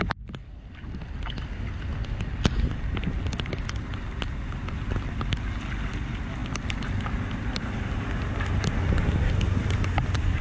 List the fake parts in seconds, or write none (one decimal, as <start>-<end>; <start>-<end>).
none